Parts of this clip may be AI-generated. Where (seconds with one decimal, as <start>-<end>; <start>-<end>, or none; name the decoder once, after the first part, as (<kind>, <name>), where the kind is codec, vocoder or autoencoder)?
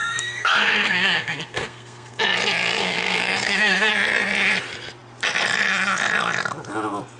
0.0-2.2 (codec, SNAC); 2.8-3.9